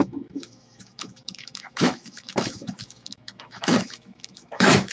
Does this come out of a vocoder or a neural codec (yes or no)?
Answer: yes